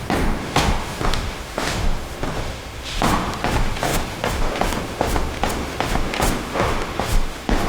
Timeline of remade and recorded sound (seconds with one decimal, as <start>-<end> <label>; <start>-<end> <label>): 0.0-7.7 remade